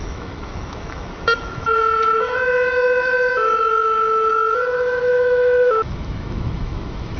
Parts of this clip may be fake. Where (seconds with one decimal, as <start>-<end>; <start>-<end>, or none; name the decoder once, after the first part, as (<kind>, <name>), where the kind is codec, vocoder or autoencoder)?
0.0-7.2 (autoencoder, DAC-VAE)